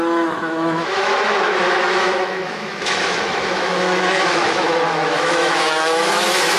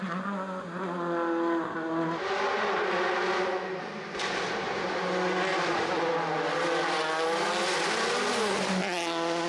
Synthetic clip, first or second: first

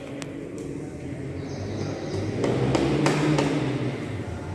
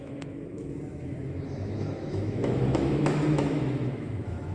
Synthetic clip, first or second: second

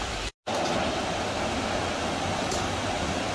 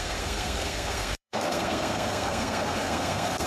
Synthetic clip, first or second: second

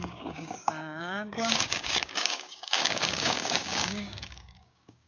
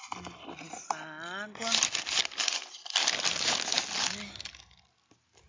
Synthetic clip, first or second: first